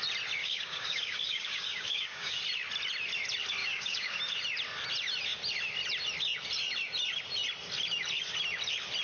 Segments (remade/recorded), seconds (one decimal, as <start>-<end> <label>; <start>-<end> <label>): 0.0-0.4 recorded; 0.4-2.4 remade; 2.4-3.6 recorded; 3.6-4.2 remade; 4.2-9.0 recorded